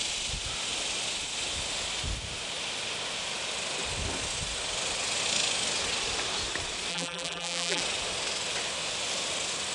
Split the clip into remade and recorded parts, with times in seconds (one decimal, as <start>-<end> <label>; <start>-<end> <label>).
0.0-6.9 recorded; 6.9-7.8 remade; 7.8-9.7 recorded

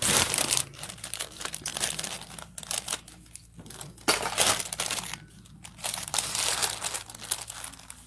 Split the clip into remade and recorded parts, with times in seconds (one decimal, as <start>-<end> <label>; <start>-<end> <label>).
0.0-1.7 remade; 1.7-5.3 recorded; 5.3-6.6 remade; 6.6-8.1 recorded